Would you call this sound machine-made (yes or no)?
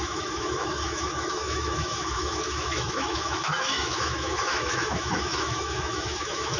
yes